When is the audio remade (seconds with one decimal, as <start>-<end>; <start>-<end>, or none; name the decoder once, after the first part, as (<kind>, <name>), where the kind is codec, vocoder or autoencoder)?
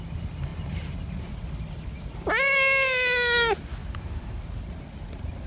3.8-4.8 (vocoder, BigVGAN v2)